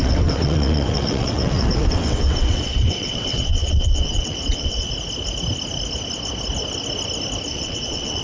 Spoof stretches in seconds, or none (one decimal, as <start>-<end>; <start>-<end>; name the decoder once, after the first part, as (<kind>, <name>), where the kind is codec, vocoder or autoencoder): 0.0-4.9 (vocoder, WaveNeXt); 7.5-8.2